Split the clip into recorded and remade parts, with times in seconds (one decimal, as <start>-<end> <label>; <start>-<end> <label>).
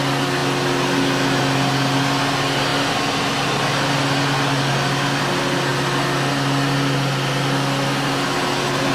0.0-8.9 recorded